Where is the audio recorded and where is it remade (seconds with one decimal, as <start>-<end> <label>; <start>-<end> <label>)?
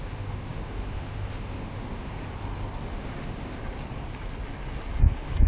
0.0-2.2 remade; 2.2-2.9 recorded; 2.9-3.6 remade; 3.6-5.0 recorded; 5.0-5.5 remade